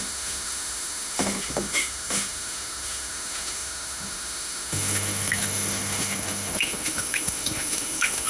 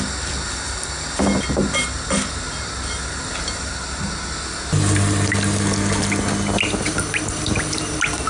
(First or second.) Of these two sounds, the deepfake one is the first